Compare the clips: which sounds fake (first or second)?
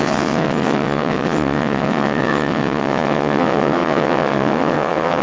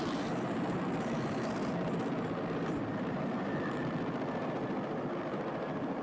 first